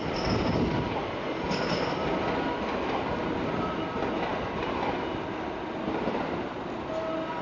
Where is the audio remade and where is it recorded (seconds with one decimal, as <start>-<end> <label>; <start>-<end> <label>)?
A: 0.0-4.3 recorded; 4.3-6.6 remade; 6.6-7.4 recorded